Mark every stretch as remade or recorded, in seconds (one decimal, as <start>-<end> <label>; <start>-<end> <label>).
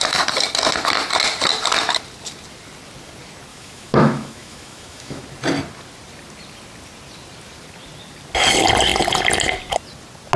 0.0-3.5 recorded; 3.5-5.2 remade; 5.2-10.4 recorded